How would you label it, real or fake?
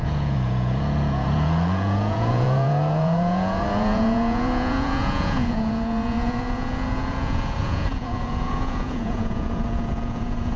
fake